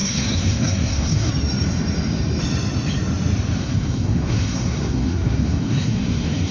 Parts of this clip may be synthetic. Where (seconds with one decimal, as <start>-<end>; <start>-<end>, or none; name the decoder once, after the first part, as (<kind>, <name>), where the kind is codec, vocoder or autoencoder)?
0.0-1.3 (codec, SNAC); 3.6-6.5